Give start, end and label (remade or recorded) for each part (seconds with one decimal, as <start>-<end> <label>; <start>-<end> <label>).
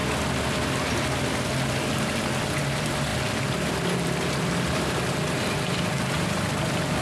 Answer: 0.0-7.0 recorded